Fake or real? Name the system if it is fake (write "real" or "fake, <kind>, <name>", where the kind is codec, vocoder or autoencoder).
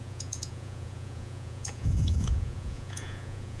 fake, vocoder, Vocos